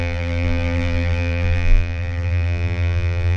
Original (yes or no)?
no